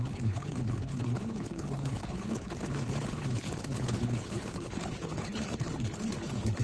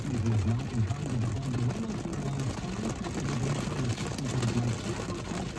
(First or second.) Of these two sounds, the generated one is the first